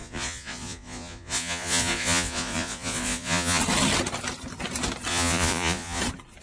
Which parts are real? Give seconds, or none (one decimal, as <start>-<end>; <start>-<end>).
3.6-5.1; 6.0-6.4